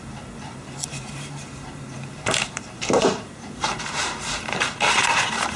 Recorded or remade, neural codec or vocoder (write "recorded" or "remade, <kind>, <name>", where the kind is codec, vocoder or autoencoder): remade, vocoder, BigVGAN v2